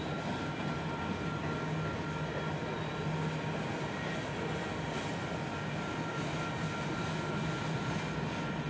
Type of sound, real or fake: real